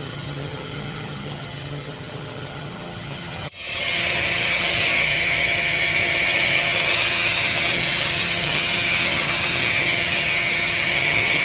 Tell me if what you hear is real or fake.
fake